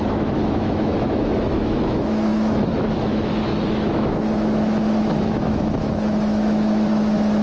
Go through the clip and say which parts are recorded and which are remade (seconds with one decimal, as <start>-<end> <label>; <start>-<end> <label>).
0.0-7.4 remade